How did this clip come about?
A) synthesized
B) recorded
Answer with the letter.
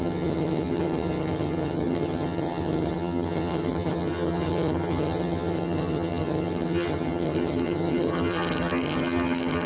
A